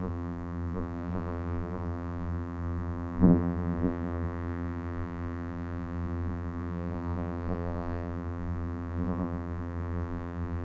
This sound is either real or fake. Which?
fake